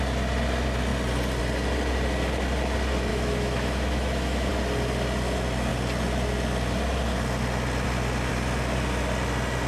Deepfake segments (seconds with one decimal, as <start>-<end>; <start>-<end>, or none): 3.1-4.5